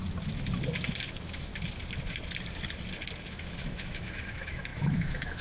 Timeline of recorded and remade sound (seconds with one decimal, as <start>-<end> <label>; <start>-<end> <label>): 0.0-0.9 recorded; 0.9-1.5 remade; 1.5-3.3 recorded; 3.3-5.4 remade